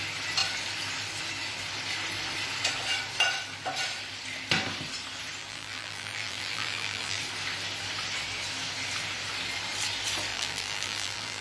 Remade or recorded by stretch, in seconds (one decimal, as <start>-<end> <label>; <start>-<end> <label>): 0.0-5.4 recorded; 5.4-7.2 remade; 7.2-10.3 recorded; 10.3-11.4 remade

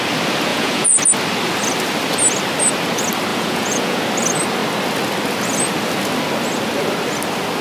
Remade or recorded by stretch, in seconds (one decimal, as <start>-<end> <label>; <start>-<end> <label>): 0.0-0.5 recorded; 0.5-1.0 remade; 1.0-3.3 recorded; 3.3-4.0 remade; 4.0-7.6 recorded